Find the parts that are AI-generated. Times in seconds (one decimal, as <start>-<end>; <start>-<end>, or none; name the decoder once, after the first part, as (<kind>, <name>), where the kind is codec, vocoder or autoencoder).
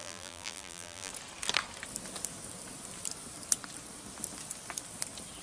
0.0-1.1 (vocoder, BigVGAN v2)